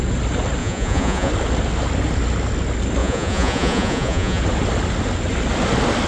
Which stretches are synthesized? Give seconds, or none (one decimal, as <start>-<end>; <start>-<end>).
0.6-1.3; 3.0-4.4